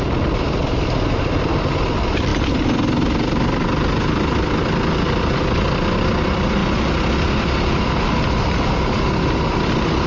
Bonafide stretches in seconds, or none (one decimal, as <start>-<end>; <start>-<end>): 0.0-10.1